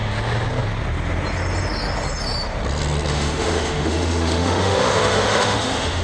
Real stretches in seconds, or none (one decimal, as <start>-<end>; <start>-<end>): 0.0-3.1

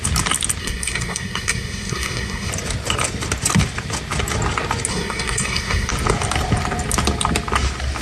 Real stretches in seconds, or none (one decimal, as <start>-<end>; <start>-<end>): 0.0-0.6; 2.5-4.9; 5.9-8.0

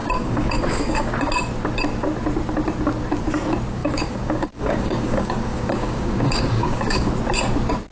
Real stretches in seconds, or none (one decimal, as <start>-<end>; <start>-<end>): 1.3-3.8; 7.1-7.9

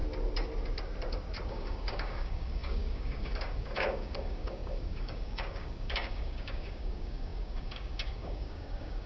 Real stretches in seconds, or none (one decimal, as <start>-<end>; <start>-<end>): 0.0-1.5

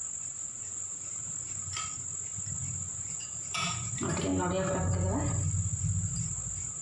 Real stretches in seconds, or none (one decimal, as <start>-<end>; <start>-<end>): 0.0-0.5; 1.3-2.9; 3.9-6.8

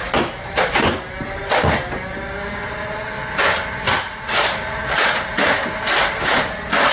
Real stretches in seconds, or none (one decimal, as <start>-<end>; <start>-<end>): 0.0-6.9

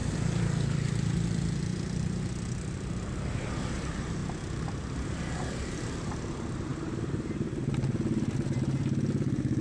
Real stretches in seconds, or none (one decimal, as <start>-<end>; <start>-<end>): 0.0-1.7; 3.5-6.7; 7.7-9.6